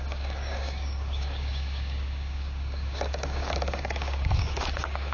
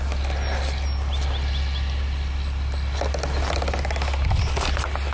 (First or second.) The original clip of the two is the second